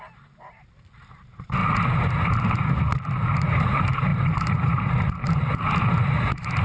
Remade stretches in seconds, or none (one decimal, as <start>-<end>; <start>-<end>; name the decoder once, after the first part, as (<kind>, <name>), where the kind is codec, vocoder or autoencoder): 0.0-1.6 (vocoder, BigVGAN v2); 3.6-6.6

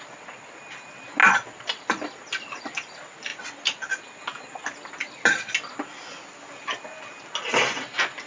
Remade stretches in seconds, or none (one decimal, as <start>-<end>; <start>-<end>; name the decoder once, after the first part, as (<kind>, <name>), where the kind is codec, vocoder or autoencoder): none

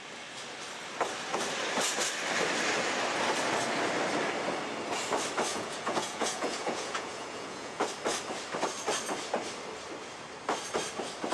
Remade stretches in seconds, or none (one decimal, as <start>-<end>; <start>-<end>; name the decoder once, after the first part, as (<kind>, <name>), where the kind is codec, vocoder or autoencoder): 5.5-7.8 (vocoder, Vocos)

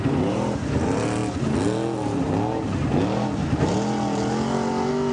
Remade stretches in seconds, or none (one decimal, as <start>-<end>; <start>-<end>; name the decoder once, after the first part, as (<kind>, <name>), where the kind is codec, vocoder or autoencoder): none

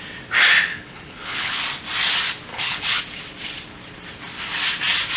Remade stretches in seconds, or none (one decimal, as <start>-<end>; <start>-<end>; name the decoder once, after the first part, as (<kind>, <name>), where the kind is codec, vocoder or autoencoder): 0.7-1.6 (codec, HILCodec); 2.5-3.0